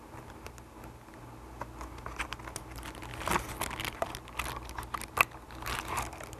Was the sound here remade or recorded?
recorded